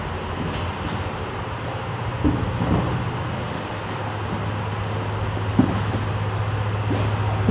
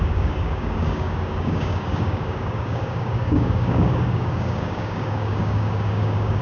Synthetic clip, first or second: second